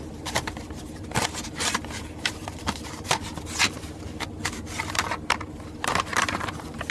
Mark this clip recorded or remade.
remade